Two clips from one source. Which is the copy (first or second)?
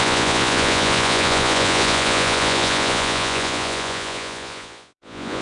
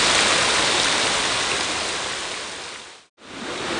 first